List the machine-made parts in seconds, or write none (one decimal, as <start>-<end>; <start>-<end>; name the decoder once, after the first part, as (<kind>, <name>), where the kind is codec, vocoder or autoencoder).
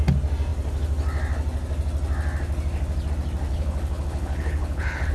3.5-5.1 (codec, HILCodec)